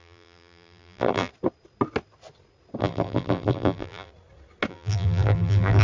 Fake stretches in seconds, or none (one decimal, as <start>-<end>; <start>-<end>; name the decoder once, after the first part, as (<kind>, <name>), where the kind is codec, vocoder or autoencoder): 0.0-1.3 (vocoder, BigVGAN v2); 2.8-4.1; 4.7-5.8